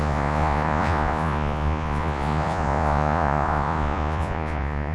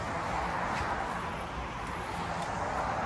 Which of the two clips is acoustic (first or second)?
second